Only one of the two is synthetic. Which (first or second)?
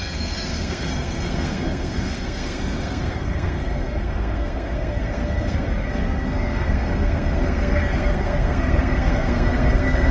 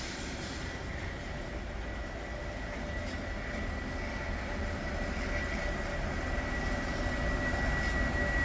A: first